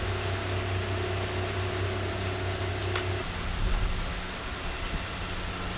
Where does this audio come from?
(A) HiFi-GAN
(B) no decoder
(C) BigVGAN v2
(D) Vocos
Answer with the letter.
B